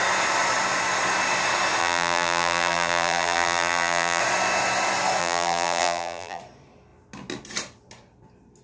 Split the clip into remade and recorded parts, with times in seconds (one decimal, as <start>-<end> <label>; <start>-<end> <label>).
0.0-1.8 recorded; 1.8-4.2 remade; 4.2-5.2 recorded; 5.2-6.4 remade; 6.4-8.6 recorded